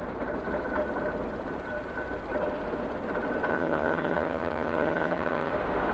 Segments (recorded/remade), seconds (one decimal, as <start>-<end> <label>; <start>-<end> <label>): 0.0-3.5 recorded; 3.5-5.5 remade; 5.5-5.9 recorded